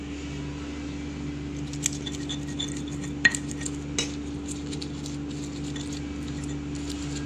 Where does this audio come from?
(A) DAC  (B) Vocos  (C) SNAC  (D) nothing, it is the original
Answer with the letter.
D